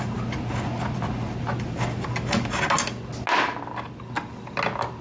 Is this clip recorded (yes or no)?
yes